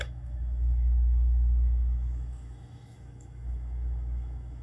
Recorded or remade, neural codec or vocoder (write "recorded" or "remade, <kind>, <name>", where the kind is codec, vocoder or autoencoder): remade, autoencoder, DAC-VAE